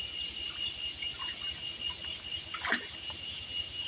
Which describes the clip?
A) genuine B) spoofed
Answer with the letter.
A